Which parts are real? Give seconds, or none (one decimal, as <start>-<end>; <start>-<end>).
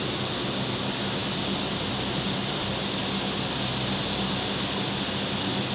0.0-5.7